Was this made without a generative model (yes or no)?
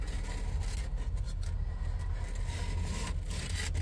yes